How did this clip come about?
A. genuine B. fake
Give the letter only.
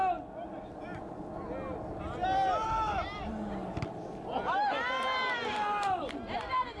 A